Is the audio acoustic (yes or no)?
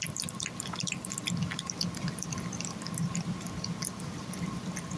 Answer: yes